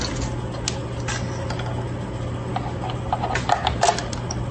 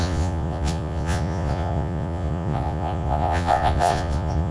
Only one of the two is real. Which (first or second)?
first